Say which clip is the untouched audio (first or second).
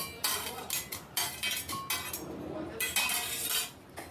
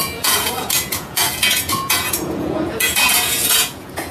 first